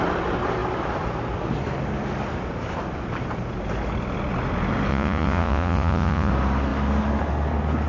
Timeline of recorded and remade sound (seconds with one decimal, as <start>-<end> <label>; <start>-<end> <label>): 0.0-4.9 recorded; 4.9-6.3 remade; 6.3-7.9 recorded